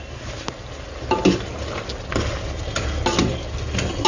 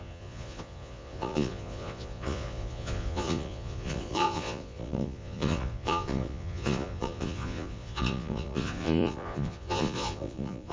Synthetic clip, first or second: second